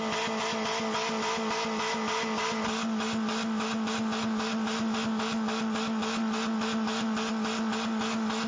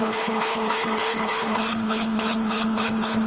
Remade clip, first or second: second